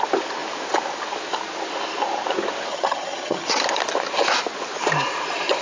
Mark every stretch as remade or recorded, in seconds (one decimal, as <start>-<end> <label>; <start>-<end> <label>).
0.0-2.7 recorded; 2.7-3.6 remade; 3.6-5.6 recorded